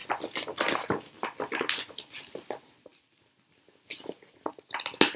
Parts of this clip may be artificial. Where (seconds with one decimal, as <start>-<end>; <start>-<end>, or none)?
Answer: none